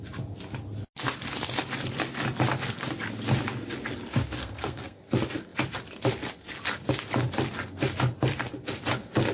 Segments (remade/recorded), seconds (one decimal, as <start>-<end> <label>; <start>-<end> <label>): 0.0-4.4 recorded; 4.4-5.0 remade; 5.0-9.3 recorded